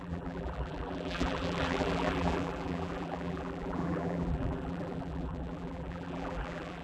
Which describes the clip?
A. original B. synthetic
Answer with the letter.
B